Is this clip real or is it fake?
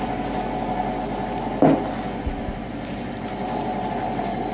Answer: real